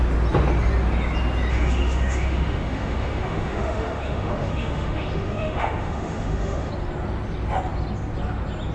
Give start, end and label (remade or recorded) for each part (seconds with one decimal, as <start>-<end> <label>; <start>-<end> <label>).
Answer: 0.0-1.5 recorded; 1.5-6.7 remade; 6.7-8.7 recorded